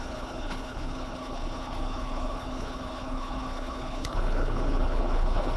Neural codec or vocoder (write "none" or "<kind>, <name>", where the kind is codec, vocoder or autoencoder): codec, HILCodec